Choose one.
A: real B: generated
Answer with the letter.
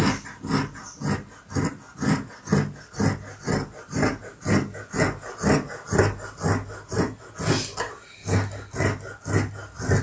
A